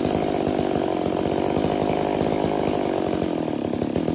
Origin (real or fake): real